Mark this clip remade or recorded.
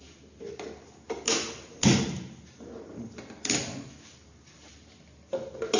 recorded